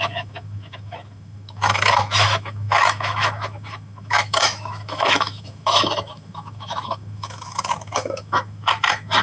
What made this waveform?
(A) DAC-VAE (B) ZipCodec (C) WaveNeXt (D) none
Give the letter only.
A